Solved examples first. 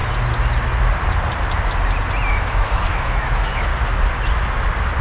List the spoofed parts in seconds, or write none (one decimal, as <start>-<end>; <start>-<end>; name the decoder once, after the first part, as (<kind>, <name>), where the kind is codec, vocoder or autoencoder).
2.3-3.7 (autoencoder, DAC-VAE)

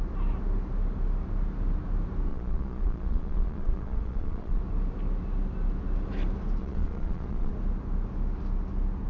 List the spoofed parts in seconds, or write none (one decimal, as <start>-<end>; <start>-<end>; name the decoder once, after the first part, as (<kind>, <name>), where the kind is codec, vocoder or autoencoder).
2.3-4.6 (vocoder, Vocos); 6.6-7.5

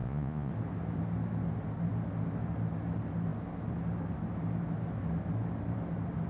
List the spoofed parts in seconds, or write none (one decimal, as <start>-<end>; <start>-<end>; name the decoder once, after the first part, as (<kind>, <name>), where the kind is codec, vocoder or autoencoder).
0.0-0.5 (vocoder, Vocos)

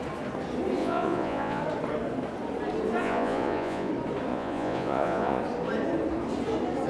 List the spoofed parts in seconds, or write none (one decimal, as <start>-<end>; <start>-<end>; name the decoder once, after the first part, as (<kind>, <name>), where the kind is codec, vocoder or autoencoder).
0.8-1.6 (vocoder, Vocos); 3.0-3.9; 4.3-5.4

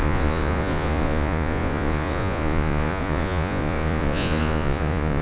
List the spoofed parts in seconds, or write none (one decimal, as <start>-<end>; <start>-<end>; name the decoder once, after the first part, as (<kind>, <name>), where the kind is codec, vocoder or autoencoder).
0.0-5.2 (vocoder, Vocos)

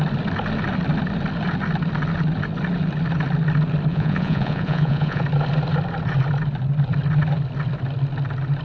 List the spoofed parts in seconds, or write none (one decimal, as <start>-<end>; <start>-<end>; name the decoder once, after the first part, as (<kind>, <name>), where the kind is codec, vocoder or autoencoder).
3.9-5.2 (vocoder, Vocos)

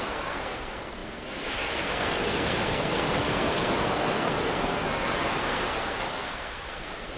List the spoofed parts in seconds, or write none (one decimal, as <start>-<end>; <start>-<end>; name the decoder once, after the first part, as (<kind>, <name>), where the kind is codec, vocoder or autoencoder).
0.0-7.2 (codec, SNAC)

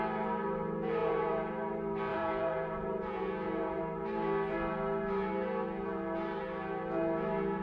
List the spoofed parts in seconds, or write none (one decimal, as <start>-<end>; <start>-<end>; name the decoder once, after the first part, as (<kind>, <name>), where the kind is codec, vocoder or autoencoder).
1.0-1.5 (vocoder, Vocos); 2.1-3.8